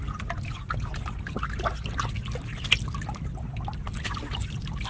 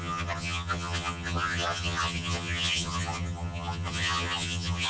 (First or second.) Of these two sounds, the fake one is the second